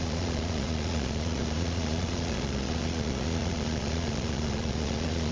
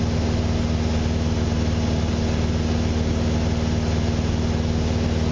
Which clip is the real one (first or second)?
second